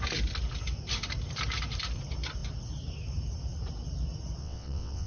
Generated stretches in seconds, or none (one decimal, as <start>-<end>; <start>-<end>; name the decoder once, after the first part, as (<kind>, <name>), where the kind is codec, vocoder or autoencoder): 4.4-5.1 (vocoder, WaveNeXt)